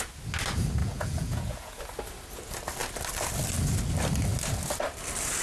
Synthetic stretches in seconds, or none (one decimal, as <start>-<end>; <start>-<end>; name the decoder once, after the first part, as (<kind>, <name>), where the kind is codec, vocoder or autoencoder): 0.8-1.8 (vocoder, Vocos)